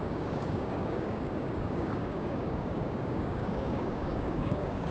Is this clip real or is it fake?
fake